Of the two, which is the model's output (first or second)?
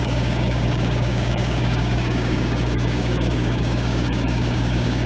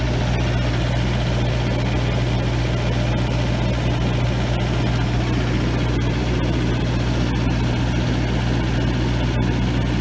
first